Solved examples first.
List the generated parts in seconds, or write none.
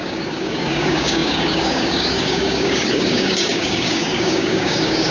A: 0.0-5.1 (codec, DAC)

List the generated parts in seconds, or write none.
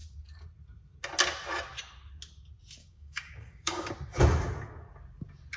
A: 2.8-3.9 (codec, DAC)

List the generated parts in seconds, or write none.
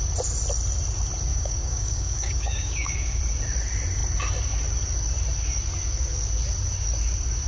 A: 1.3-3.2 (codec, DAC)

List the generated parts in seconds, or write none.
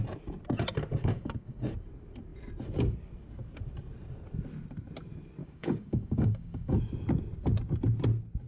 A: 1.0-1.7 (codec, DAC); 5.4-6.8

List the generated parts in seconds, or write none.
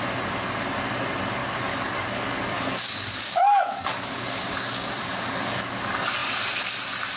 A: 1.4-5.7 (codec, DAC)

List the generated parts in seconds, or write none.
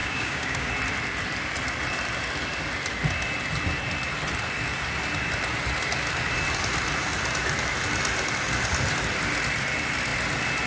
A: 0.0-0.7 (codec, DAC)